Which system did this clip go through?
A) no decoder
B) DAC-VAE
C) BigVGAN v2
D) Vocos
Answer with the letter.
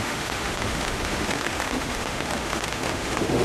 B